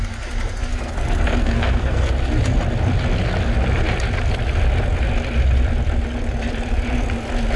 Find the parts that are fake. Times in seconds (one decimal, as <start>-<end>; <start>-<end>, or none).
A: 0.7-2.1